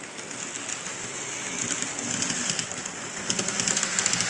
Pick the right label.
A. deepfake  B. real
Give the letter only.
B